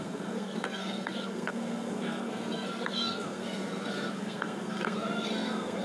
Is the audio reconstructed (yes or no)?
yes